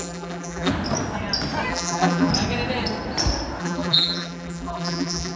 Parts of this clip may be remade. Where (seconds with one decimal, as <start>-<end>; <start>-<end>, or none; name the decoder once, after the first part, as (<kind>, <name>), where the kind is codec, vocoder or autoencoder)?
0.0-0.7 (vocoder, BigVGAN v2); 1.7-2.3; 3.6-5.4